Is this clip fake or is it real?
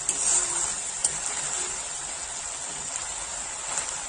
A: real